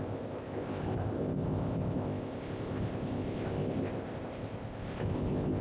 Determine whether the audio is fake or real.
fake